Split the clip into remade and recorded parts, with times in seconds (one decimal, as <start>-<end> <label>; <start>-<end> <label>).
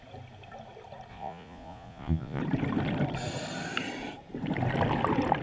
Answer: 0.0-1.1 recorded; 1.1-2.4 remade; 2.4-5.4 recorded